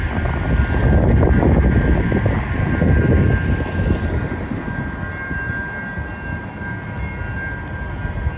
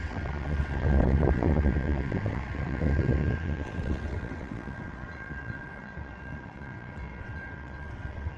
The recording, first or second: first